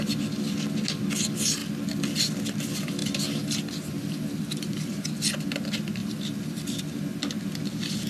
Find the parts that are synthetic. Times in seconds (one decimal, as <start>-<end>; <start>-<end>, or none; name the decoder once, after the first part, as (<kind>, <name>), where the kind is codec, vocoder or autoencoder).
3.0-4.9 (vocoder, BigVGAN v2); 6.0-6.8